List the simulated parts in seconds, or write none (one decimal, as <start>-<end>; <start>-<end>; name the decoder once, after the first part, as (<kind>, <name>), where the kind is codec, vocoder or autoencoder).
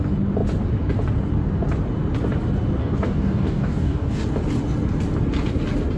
2.8-4.2 (codec, DAC)